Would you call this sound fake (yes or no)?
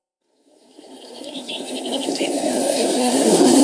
yes